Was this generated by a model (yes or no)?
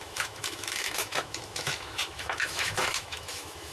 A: yes